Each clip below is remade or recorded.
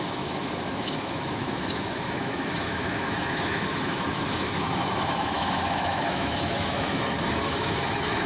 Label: remade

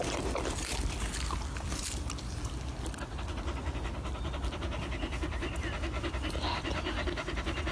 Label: recorded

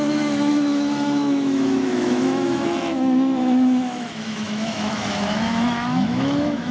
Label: remade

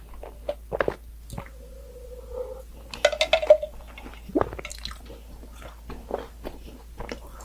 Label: recorded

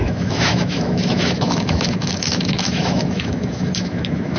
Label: remade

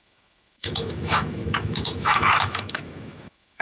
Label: remade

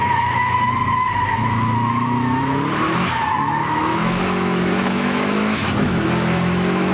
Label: remade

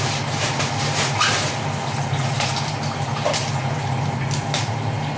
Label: recorded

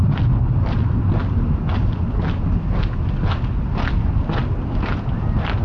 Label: recorded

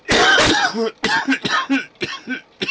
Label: recorded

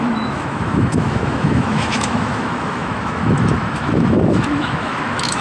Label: remade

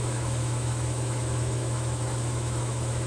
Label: remade